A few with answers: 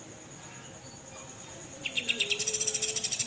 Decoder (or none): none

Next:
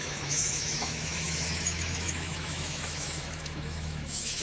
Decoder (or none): autoencoder, DAC-VAE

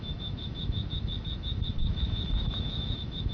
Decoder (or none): autoencoder, DAC-VAE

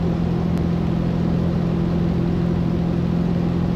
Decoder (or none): none